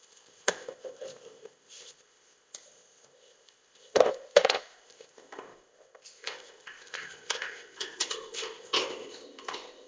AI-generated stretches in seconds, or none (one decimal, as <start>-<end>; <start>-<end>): 0.0-9.9